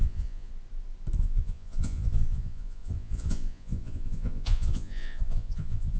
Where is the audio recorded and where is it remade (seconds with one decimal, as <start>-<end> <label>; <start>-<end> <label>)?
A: 0.0-0.5 remade; 0.5-1.2 recorded; 1.2-6.0 remade